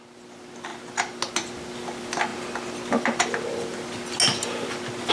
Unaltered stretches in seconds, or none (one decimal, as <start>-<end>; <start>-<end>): 0.0-5.1